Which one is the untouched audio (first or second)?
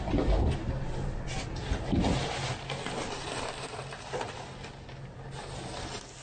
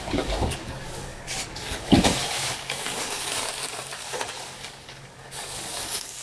first